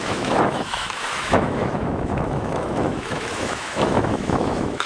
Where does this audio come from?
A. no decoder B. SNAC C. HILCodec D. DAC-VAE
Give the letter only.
D